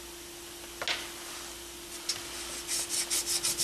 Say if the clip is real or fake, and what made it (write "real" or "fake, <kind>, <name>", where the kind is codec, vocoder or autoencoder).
real